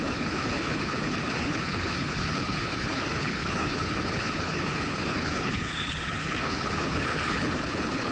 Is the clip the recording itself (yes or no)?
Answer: no